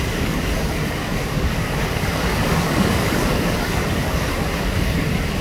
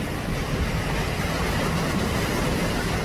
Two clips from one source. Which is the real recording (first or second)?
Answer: second